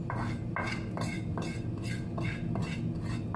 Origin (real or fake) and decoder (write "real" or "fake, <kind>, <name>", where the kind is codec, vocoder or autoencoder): real